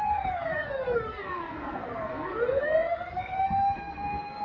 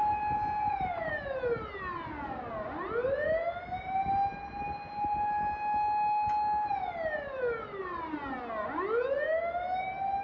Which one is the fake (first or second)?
first